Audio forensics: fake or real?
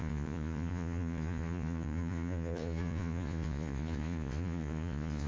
fake